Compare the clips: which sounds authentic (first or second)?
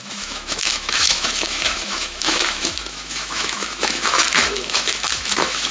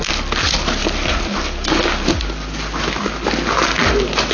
second